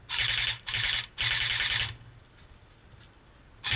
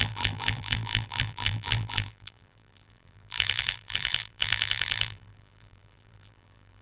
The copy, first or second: second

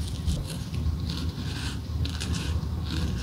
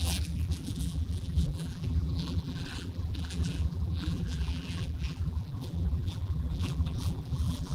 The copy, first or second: second